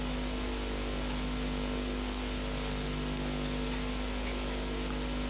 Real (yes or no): yes